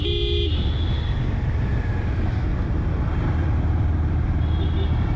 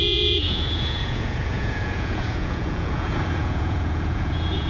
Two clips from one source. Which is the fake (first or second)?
second